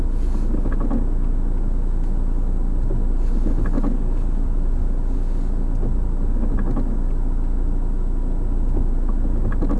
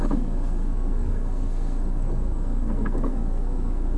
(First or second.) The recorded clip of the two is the first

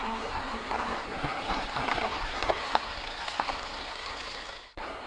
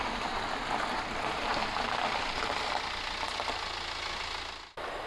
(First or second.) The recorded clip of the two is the second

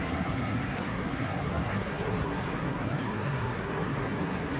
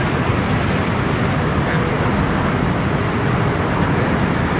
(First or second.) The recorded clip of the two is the second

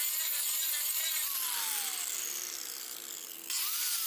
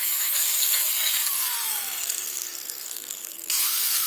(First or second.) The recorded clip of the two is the first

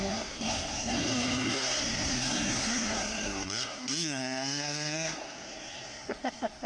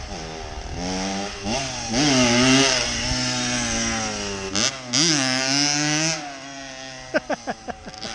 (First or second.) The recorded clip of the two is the second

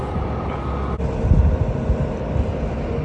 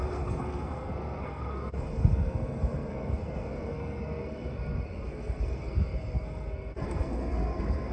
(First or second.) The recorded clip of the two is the first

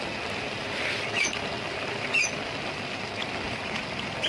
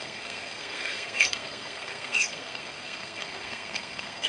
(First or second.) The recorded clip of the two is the first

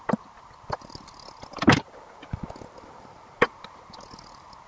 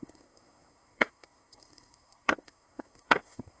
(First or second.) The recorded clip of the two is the first